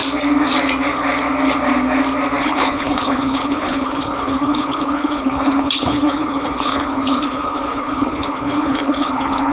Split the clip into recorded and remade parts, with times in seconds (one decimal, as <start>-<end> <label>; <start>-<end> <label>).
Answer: 0.0-2.4 recorded; 2.4-9.5 remade